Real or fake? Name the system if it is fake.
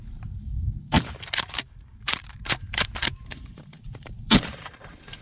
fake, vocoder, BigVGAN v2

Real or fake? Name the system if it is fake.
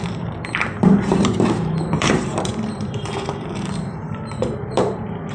fake, vocoder, BigVGAN v2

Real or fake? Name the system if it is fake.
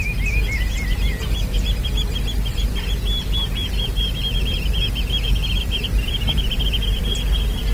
real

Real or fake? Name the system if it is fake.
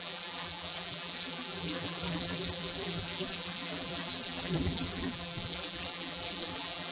fake, vocoder, BigVGAN v2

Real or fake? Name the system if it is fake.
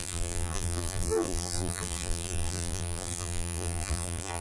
fake, vocoder, BigVGAN v2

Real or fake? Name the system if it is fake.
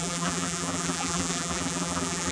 fake, vocoder, BigVGAN v2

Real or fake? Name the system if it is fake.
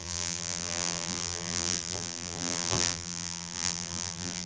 fake, vocoder, BigVGAN v2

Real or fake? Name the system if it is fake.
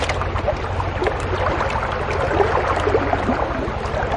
real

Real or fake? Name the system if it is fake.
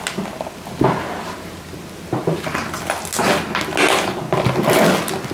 real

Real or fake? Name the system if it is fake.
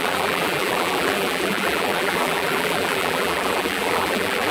fake, vocoder, BigVGAN v2